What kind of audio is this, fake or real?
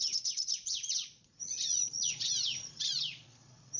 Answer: fake